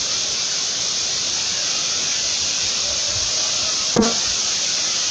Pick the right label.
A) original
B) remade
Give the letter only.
A